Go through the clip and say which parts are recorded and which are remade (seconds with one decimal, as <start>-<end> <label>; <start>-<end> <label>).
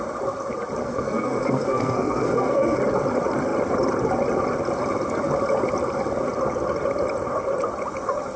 0.0-0.8 recorded; 0.8-2.8 remade; 2.8-8.4 recorded